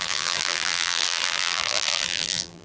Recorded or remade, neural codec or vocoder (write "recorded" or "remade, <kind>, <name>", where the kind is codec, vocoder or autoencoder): remade, vocoder, BigVGAN v2